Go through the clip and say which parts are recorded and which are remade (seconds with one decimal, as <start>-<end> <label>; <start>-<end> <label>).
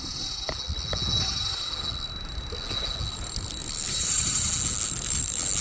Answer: 0.0-3.6 recorded; 3.6-4.5 remade; 4.5-5.6 recorded